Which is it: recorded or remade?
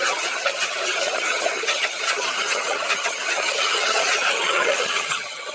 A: remade